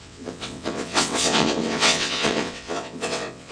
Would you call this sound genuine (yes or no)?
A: no